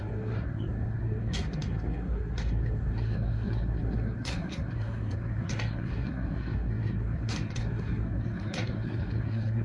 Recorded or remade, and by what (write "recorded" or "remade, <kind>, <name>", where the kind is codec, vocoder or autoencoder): remade, codec, SNAC